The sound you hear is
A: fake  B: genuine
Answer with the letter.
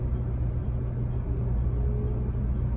B